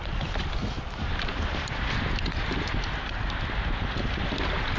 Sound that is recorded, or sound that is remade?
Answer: recorded